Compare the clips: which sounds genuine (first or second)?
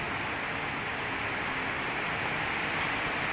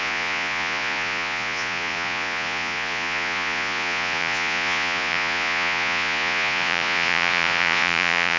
first